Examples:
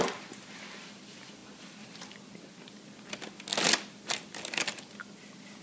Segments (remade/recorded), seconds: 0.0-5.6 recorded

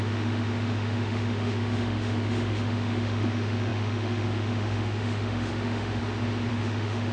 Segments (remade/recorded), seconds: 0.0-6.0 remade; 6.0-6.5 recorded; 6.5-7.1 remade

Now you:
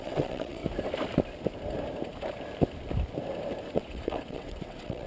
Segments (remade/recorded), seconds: 0.0-0.6 remade; 0.6-3.7 recorded; 3.7-5.1 remade

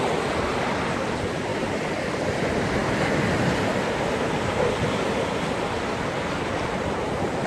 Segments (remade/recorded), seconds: 0.0-7.5 recorded